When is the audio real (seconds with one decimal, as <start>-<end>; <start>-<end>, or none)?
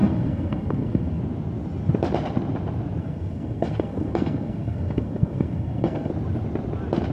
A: 1.2-3.0; 6.1-7.1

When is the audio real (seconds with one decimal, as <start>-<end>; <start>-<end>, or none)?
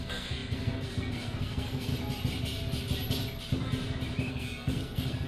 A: 1.9-4.3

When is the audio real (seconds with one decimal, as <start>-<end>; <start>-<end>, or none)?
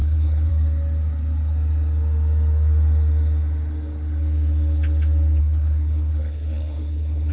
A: 0.5-5.4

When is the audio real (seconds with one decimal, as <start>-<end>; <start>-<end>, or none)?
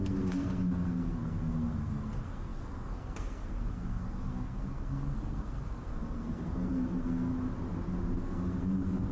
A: 7.3-8.2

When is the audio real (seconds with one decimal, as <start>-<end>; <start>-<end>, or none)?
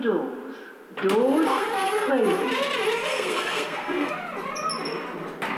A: 0.0-1.5; 2.1-3.1; 4.1-5.6